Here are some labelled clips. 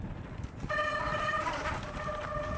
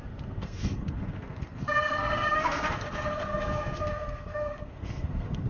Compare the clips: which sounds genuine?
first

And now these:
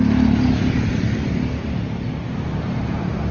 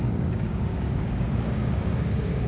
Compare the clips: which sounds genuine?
first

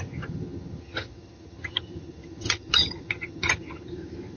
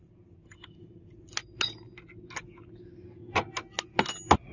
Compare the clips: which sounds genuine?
second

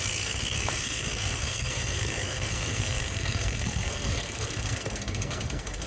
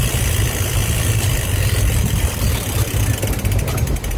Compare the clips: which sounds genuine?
second